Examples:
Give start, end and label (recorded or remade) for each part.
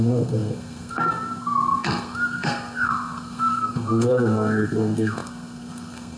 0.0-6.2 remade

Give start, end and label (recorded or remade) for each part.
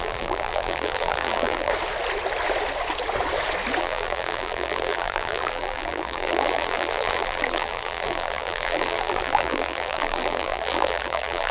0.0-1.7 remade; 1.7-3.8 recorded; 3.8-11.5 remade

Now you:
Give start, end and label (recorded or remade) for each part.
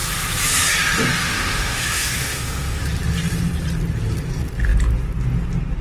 0.0-1.2 recorded; 1.2-2.8 remade; 2.8-5.8 recorded